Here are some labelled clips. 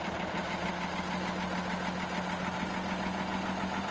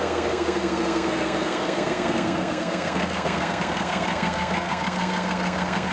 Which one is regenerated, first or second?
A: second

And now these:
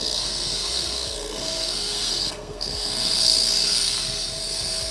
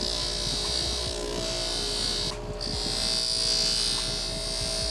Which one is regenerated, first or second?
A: first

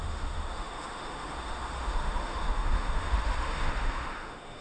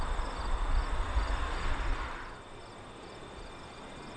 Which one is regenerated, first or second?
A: first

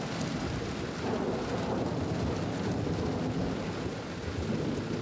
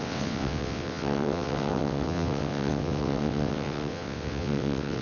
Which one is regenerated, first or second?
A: second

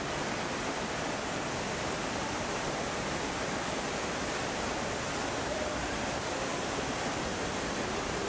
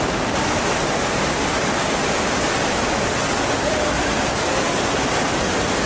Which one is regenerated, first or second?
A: first